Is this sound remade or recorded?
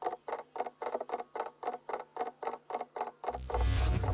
recorded